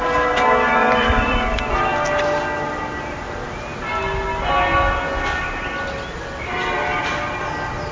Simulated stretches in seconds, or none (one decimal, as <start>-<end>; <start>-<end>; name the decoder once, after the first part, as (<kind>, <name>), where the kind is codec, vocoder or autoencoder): 0.8-1.8 (vocoder, BigVGAN v2)